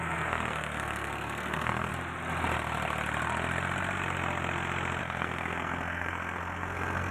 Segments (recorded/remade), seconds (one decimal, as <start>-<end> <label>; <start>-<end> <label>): 0.0-1.9 remade; 1.9-5.0 recorded; 5.0-7.1 remade